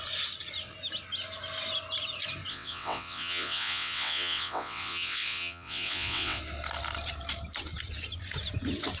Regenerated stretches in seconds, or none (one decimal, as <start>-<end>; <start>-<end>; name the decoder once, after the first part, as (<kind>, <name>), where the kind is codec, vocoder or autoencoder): 2.5-6.4 (vocoder, WaveNeXt)